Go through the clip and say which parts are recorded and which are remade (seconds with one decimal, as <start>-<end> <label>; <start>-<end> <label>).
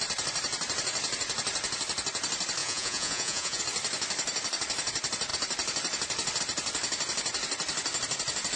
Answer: 0.0-2.6 recorded; 2.6-3.6 remade; 3.6-8.6 recorded